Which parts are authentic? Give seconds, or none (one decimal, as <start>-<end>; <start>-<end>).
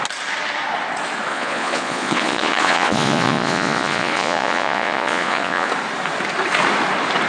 0.0-1.3; 5.7-7.3